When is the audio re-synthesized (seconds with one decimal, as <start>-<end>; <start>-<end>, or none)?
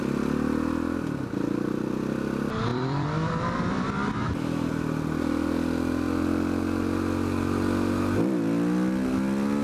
2.7-4.1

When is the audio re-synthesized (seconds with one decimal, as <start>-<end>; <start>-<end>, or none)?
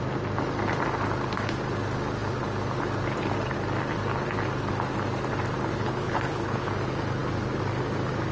5.7-6.7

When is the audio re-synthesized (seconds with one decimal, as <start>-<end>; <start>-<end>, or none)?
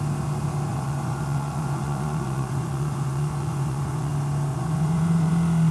0.7-4.1; 4.5-5.3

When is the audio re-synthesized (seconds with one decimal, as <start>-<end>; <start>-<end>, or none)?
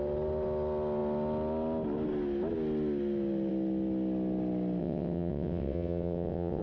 4.8-6.6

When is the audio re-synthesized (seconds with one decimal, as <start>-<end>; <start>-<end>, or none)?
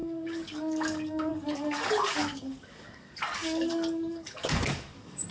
0.0-5.3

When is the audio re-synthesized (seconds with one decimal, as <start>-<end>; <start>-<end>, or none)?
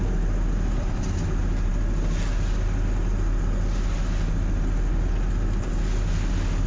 none